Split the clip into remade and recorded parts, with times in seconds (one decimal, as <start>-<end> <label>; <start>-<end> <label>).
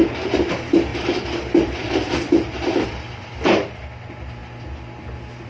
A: 0.0-0.9 recorded; 0.9-2.9 remade; 2.9-5.5 recorded